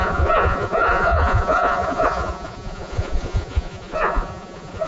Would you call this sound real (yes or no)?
no